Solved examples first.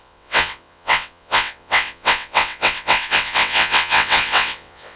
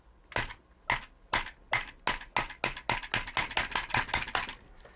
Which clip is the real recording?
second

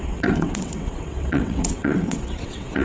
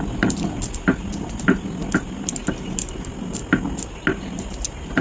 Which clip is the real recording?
second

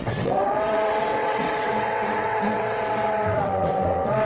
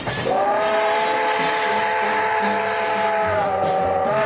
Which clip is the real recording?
second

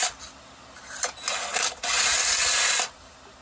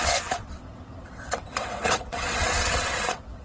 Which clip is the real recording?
first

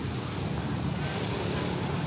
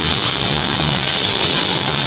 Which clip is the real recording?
first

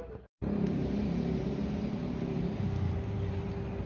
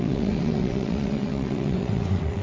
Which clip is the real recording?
first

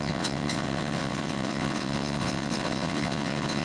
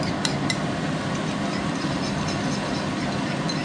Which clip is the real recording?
second